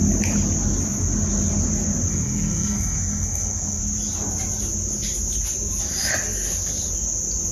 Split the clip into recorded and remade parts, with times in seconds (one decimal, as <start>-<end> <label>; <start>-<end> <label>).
0.0-2.1 recorded; 2.1-3.8 remade; 3.8-7.5 recorded